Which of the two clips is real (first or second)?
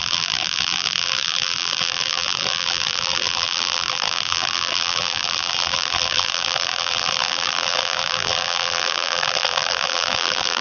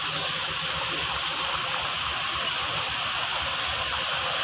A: second